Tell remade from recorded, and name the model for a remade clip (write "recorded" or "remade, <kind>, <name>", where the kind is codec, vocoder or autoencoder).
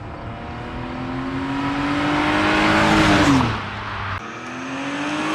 recorded